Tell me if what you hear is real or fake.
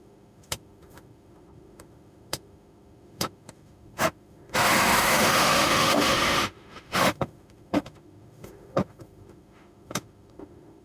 fake